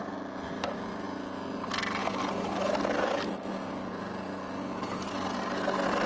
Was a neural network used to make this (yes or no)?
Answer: no